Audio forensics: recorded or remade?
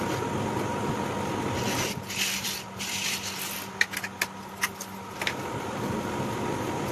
recorded